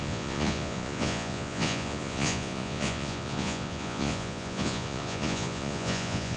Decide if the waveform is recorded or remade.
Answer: remade